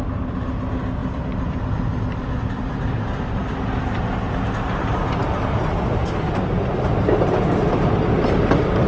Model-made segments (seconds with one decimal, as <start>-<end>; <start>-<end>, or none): 1.0-2.7; 3.4-4.0